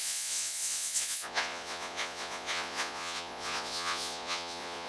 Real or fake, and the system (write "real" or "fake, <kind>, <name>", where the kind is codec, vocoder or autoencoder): fake, vocoder, Vocos